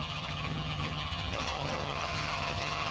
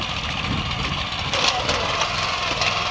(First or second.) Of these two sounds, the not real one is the first